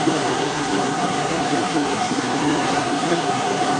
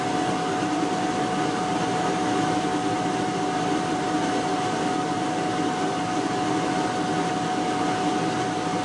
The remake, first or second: first